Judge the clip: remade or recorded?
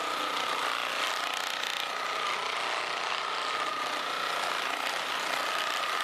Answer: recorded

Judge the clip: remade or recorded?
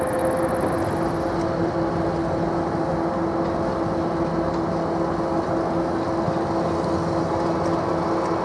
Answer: recorded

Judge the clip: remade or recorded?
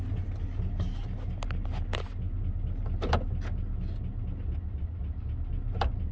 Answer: recorded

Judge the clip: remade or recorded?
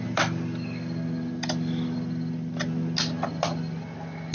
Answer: recorded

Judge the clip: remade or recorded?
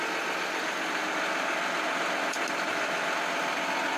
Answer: recorded